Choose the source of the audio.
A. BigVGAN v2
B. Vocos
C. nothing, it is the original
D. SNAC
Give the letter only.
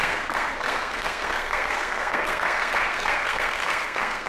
D